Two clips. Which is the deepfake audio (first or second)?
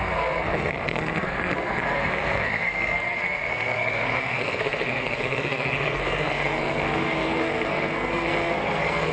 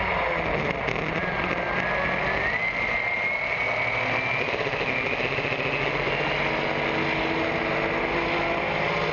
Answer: first